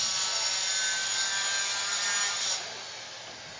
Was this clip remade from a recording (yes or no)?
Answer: no